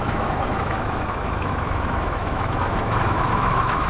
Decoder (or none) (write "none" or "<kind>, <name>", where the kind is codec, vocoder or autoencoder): autoencoder, DAC-VAE